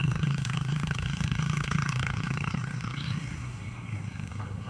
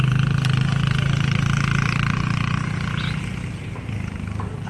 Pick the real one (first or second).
second